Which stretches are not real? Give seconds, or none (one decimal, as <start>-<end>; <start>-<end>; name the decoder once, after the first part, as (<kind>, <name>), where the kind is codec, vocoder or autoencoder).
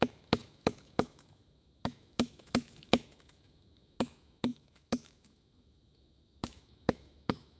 0.0-7.6 (autoencoder, DAC-VAE)